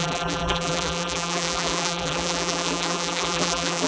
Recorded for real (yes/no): no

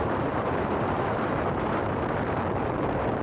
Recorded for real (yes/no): no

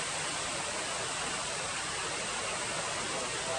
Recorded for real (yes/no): yes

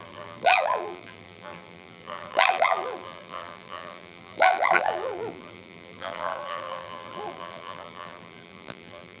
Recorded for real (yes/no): no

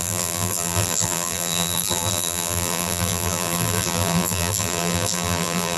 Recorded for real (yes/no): no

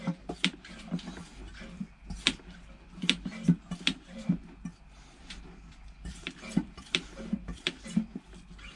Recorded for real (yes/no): no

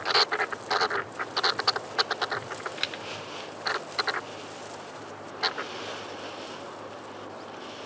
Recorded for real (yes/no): yes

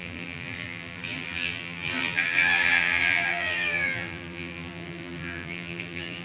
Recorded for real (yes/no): no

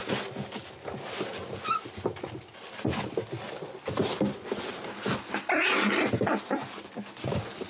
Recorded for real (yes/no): yes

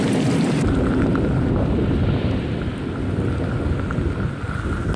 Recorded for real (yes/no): yes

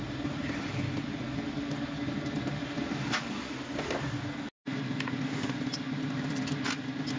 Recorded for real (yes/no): yes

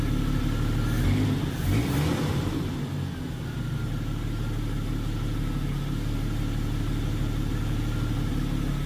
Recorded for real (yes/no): yes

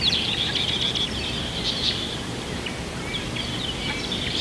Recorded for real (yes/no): no